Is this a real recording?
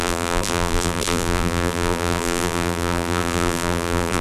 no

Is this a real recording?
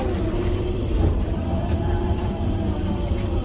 no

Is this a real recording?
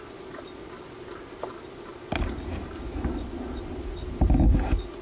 yes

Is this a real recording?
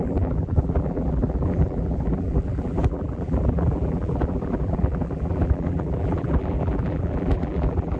no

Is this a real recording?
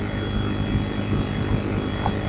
yes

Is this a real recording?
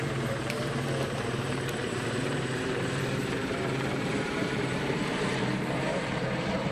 no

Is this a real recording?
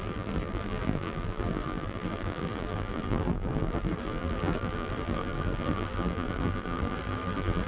no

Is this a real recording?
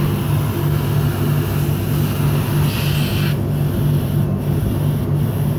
yes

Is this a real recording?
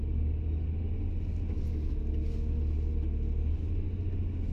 yes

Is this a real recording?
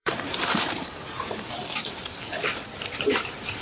no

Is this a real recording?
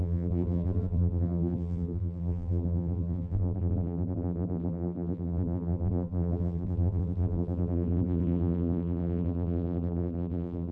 no